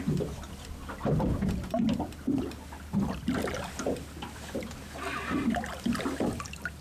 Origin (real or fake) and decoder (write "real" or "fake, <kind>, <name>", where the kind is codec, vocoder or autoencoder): real